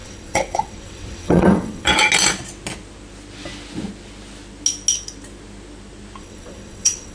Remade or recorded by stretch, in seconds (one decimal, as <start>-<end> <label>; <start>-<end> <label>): 0.0-1.9 remade; 1.9-6.2 recorded; 6.2-7.1 remade